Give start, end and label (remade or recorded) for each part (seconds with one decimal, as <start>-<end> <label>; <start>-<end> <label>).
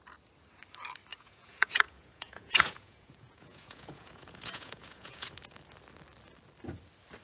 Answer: 0.0-1.1 recorded; 1.1-5.4 remade; 5.4-7.2 recorded